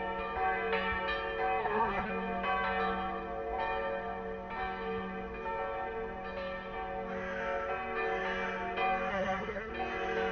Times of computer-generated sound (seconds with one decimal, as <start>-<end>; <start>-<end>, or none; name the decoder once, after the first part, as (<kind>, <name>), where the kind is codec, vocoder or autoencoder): 1.6-2.1 (codec, SNAC); 9.1-9.7